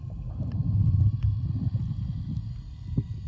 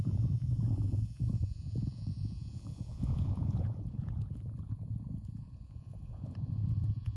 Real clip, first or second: first